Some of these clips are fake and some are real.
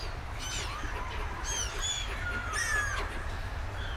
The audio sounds real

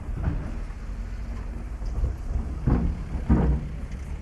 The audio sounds real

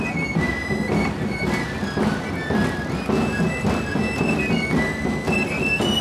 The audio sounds real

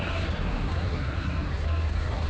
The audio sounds fake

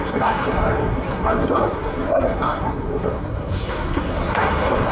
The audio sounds fake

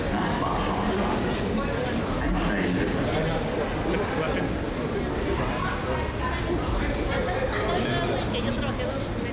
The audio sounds real